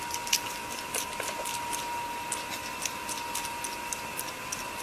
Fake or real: fake